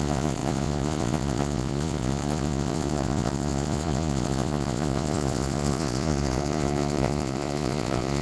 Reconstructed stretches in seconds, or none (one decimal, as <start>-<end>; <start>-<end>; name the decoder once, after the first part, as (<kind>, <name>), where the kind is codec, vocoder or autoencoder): 0.0-8.2 (vocoder, Vocos)